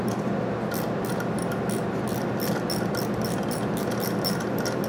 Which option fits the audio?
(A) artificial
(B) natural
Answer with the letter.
B